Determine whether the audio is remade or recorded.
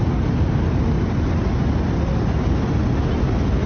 recorded